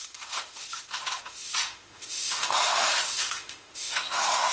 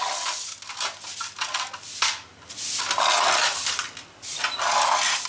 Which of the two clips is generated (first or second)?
first